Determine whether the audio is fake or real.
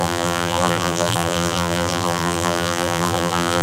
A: fake